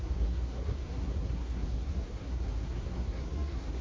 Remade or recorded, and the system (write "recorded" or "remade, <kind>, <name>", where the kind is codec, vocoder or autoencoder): remade, codec, SNAC